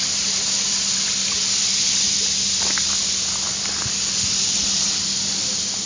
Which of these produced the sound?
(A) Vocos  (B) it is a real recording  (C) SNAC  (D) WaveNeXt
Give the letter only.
B